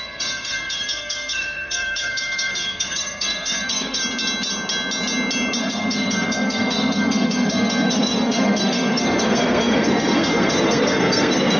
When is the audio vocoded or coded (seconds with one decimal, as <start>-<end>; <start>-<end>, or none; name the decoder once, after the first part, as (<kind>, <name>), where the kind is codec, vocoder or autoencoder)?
0.0-4.0 (codec, SNAC); 5.6-11.6